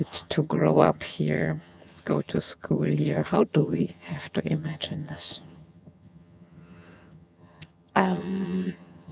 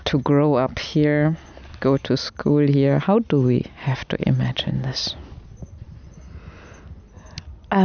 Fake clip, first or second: first